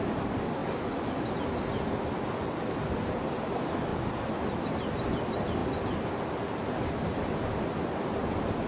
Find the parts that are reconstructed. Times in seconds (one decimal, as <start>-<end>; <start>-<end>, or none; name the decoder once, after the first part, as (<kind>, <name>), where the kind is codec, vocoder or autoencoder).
none